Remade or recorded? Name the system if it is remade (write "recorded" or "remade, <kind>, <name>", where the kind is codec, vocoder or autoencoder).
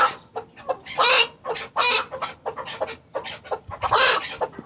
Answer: recorded